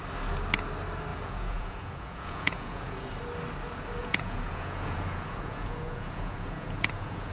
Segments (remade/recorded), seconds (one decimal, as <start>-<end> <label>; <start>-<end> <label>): 0.0-1.1 recorded; 1.1-3.1 remade; 3.1-4.0 recorded; 4.0-7.3 remade